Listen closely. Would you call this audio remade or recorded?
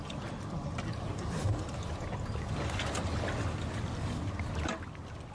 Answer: recorded